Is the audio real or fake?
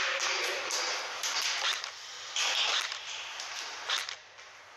real